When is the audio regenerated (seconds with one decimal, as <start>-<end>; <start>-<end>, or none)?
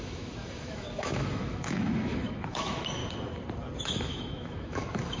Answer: 0.0-3.0; 3.8-5.2